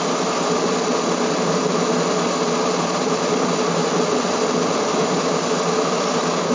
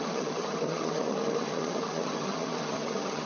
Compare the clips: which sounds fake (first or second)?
second